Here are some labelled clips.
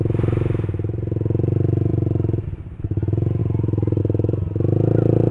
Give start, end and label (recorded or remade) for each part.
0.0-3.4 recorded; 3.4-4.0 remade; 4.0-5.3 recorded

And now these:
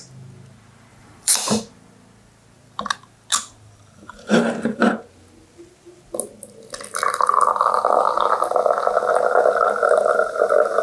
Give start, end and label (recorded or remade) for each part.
0.0-0.9 recorded; 0.9-1.6 remade; 1.6-10.8 recorded

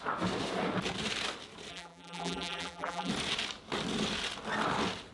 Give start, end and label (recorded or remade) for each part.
0.0-1.7 recorded; 1.7-3.1 remade; 3.1-5.1 recorded

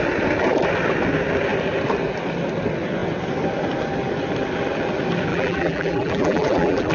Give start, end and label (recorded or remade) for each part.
0.0-5.3 recorded; 5.3-6.9 remade

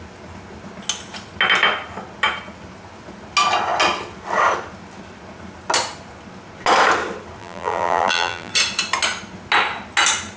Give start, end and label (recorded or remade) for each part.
0.0-7.4 recorded; 7.4-8.5 remade; 8.5-10.4 recorded

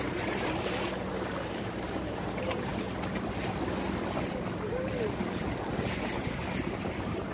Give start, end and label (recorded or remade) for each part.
0.0-2.7 remade; 2.7-5.7 recorded; 5.7-7.3 remade

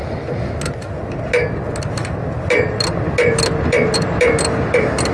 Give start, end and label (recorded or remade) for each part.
0.0-5.1 recorded

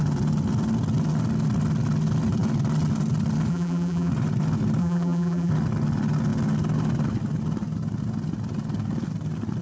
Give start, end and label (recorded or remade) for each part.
0.0-3.5 recorded; 3.5-4.1 remade; 4.1-4.8 recorded; 4.8-5.5 remade; 5.5-9.6 recorded